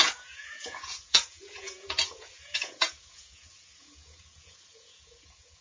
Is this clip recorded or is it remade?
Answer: remade